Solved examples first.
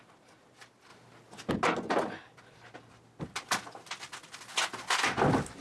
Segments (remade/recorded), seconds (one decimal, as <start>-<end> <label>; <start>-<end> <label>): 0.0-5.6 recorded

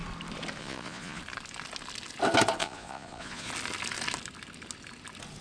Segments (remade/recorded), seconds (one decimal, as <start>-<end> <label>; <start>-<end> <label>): 0.0-0.6 recorded; 0.6-1.2 remade; 1.2-2.6 recorded; 2.6-3.5 remade; 3.5-5.4 recorded

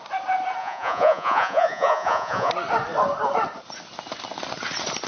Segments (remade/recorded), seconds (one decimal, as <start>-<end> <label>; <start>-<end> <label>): 0.0-0.6 recorded; 0.6-2.5 remade; 2.5-5.1 recorded